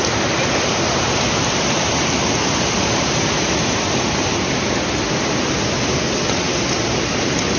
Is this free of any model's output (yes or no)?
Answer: yes